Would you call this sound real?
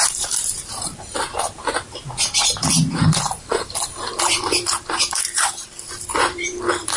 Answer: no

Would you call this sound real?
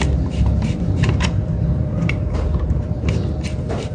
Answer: no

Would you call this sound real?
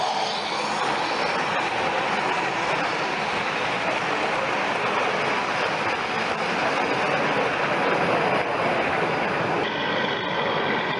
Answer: yes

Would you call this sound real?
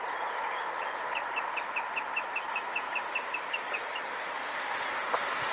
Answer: yes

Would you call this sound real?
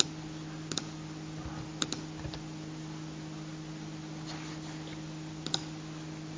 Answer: yes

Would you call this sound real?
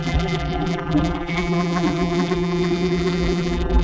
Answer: no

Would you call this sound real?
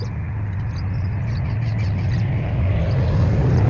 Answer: yes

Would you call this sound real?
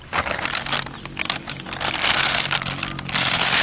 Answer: yes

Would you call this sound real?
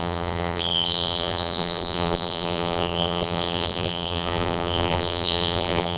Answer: no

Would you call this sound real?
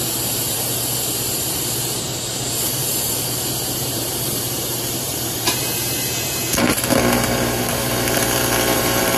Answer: no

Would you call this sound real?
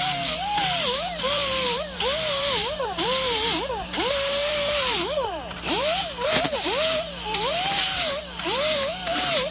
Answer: no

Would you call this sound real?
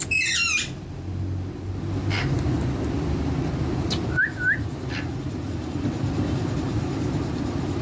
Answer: yes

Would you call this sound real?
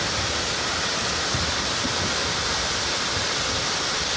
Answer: no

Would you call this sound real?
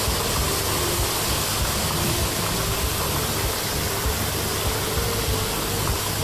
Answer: yes